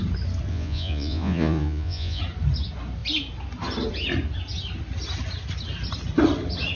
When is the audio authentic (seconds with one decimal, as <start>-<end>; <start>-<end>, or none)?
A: 0.0-0.5; 2.2-6.7